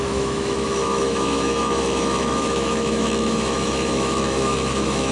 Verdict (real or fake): fake